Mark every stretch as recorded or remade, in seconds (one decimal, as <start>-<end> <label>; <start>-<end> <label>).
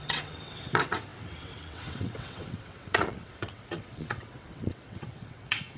0.0-5.8 remade